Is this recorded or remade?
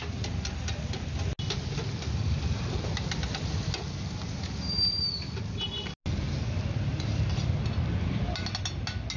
recorded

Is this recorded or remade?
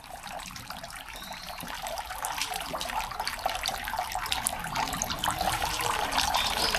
remade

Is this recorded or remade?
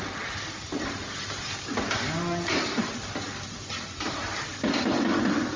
recorded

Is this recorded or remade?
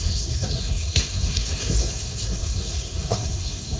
remade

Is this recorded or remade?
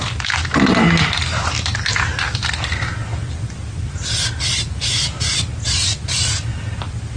recorded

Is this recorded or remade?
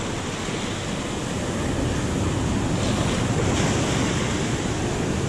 recorded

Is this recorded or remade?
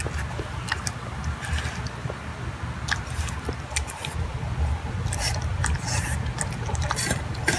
recorded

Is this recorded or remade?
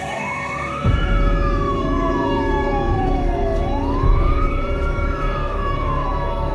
remade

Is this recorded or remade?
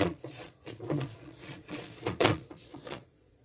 remade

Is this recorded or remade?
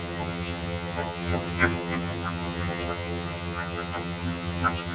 remade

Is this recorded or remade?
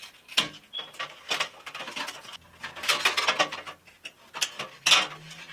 recorded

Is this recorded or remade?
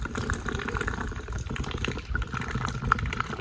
recorded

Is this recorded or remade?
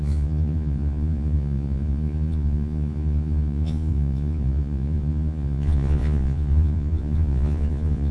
remade